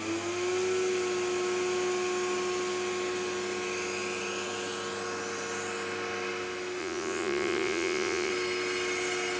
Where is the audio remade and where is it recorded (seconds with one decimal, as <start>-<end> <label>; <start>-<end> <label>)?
0.0-6.8 recorded; 6.8-8.3 remade; 8.3-9.4 recorded